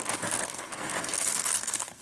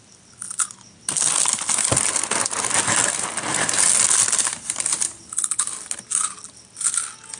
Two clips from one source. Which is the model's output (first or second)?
first